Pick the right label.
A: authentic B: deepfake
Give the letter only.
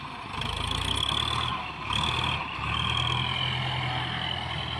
A